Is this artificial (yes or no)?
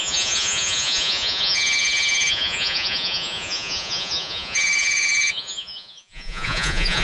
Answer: yes